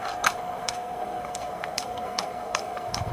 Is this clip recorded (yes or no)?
no